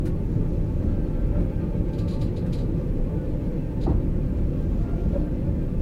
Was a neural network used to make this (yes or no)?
no